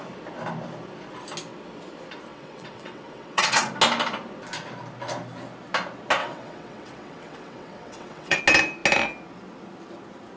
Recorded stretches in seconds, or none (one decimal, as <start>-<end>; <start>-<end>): 0.0-2.3; 3.7-6.2; 8.4-10.4

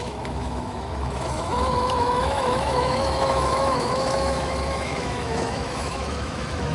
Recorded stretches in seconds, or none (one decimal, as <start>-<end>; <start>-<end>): none

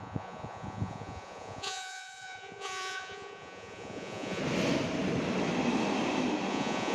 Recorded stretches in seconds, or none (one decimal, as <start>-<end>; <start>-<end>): 4.4-6.5

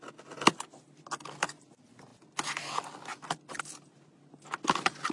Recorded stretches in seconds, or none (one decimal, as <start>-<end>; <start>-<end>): 0.0-5.1

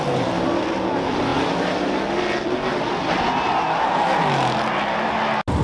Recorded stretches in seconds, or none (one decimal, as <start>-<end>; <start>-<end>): 0.0-5.6

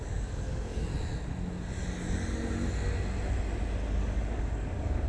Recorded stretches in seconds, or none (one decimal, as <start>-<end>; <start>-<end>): 0.9-4.0

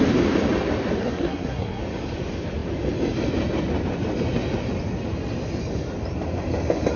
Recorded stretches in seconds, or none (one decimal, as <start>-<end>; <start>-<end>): 0.0-1.0; 1.8-7.0

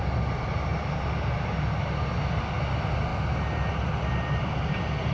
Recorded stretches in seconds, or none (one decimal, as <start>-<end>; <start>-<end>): 0.0-5.1